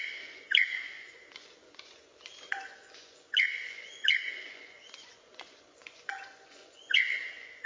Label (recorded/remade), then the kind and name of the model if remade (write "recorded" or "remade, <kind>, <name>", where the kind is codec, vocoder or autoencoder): remade, vocoder, Vocos